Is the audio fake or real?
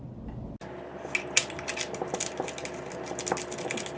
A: real